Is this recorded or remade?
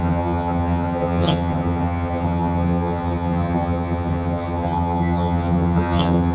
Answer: remade